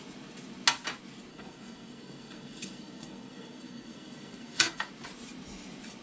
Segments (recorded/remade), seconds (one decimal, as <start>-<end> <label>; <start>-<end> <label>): 0.0-1.3 recorded; 1.3-4.9 remade; 4.9-6.0 recorded